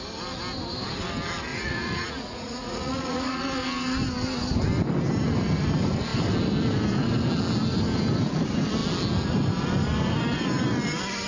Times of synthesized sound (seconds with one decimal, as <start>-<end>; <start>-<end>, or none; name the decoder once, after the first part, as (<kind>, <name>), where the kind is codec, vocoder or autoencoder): 1.5-3.4 (vocoder, Vocos)